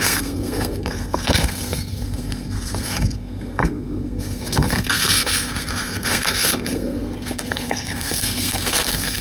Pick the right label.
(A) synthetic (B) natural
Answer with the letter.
A